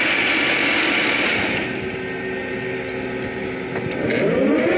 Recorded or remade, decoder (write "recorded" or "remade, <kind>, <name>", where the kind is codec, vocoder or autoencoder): recorded